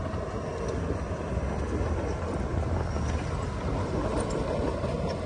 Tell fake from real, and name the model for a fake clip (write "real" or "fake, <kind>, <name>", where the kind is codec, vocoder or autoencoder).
real